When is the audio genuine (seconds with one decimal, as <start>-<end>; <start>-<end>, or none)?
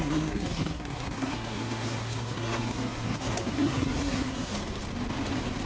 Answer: 4.5-5.7